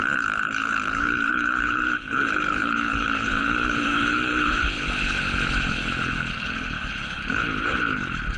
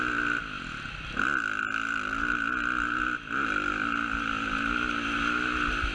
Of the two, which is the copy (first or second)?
first